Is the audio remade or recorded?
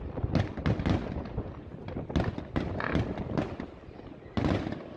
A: recorded